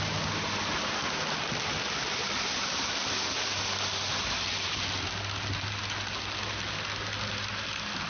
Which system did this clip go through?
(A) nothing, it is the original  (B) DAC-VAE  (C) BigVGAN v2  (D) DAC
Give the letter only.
A